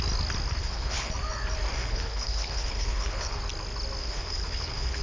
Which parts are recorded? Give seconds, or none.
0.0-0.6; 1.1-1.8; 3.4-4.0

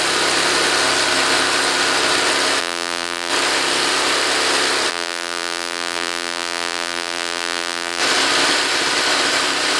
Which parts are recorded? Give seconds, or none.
0.0-2.6; 3.3-4.9; 8.0-9.8

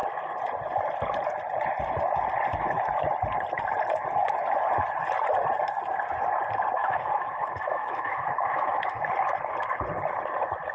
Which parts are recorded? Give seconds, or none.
0.0-6.8; 9.0-10.7

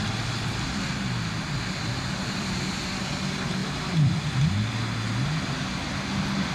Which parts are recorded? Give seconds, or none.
0.0-6.5

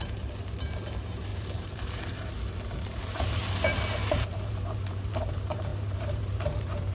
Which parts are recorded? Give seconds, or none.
none

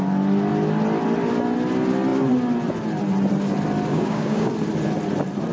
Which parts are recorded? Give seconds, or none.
0.0-3.9; 4.5-5.5

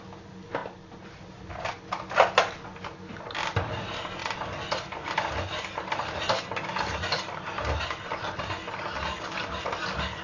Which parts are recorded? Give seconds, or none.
0.0-10.2

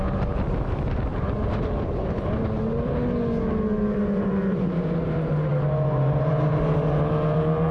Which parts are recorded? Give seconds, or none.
0.0-7.7